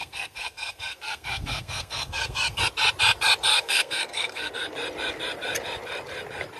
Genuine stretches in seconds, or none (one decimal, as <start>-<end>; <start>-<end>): 2.6-3.5; 4.5-6.6